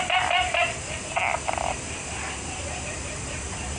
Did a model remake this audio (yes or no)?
no